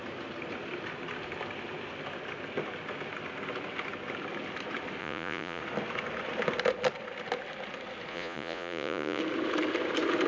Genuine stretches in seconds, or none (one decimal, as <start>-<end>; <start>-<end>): 0.0-5.0; 5.6-8.1; 9.2-10.3